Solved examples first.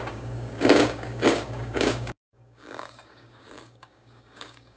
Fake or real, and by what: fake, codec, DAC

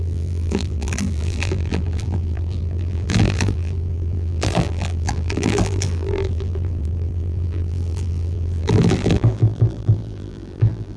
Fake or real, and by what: fake, vocoder, BigVGAN v2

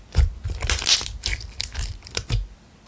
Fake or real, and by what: fake, vocoder, BigVGAN v2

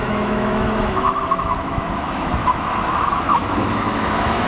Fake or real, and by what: fake, autoencoder, DAC-VAE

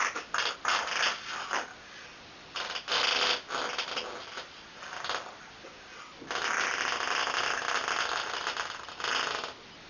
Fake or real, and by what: real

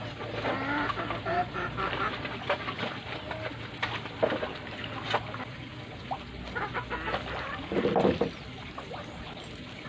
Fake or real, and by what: real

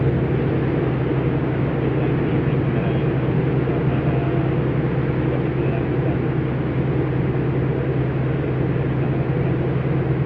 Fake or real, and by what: real